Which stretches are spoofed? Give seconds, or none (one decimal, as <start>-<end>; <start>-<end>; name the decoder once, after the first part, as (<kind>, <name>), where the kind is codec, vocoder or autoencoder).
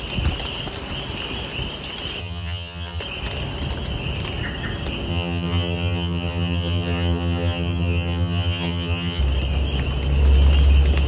2.2-3.0 (vocoder, HiFi-GAN); 5.1-9.2